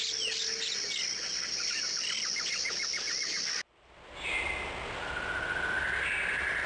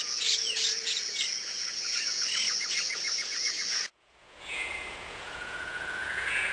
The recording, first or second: first